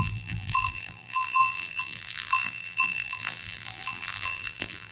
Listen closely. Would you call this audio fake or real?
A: fake